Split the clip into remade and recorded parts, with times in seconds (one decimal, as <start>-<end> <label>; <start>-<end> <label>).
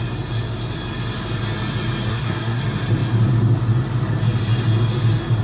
0.0-2.1 recorded; 2.1-2.6 remade; 2.6-5.4 recorded